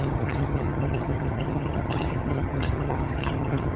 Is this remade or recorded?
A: remade